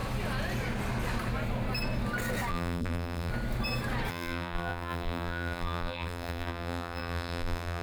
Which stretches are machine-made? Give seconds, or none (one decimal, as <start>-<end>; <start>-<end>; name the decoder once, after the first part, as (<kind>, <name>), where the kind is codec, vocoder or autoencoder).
2.5-3.3 (vocoder, BigVGAN v2); 4.1-7.8